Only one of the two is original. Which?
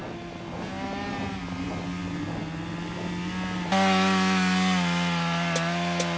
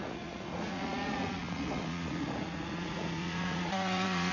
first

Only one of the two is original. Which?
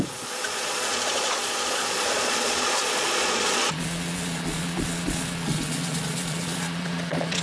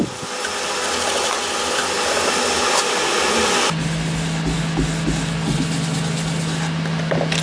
second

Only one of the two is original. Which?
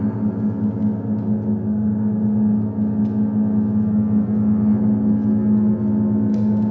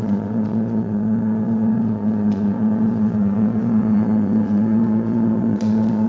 first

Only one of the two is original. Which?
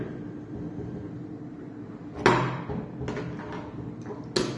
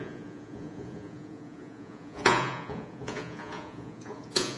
first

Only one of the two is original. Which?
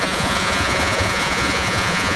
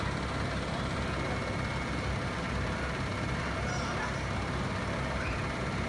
second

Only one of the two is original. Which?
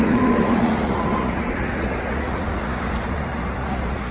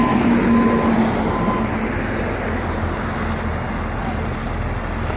second